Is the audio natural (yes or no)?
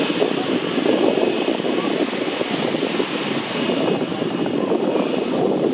yes